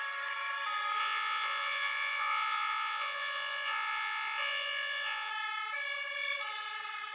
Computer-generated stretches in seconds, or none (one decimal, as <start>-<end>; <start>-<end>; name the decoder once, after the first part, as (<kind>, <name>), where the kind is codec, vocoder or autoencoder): 1.0-5.3 (vocoder, Vocos)